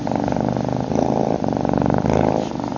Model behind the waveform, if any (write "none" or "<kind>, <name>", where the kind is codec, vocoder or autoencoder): none